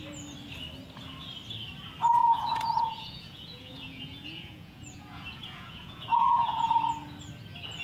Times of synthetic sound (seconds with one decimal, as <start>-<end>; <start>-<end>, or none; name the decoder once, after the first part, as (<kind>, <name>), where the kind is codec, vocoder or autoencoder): 2.2-6.9 (vocoder, Vocos)